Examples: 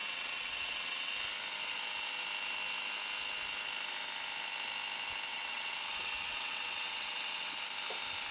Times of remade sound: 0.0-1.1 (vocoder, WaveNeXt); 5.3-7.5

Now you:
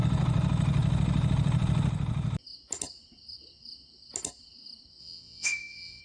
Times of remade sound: 5.0-6.0 (vocoder, WaveNeXt)

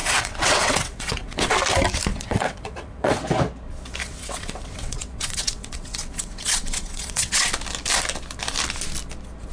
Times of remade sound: 0.0-1.5 (vocoder, WaveNeXt); 2.1-3.2; 4.0-7.5

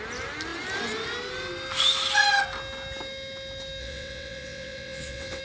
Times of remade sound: 3.8-5.4 (vocoder, WaveNeXt)

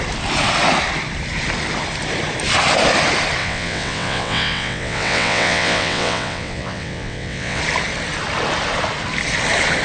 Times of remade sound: 3.4-7.6 (vocoder, WaveNeXt)

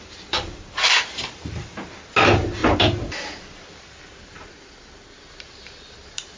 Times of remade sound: none